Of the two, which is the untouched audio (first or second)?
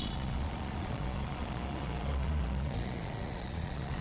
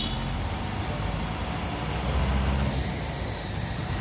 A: second